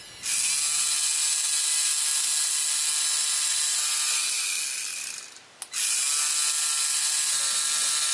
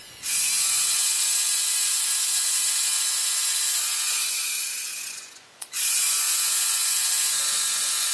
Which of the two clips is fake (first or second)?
second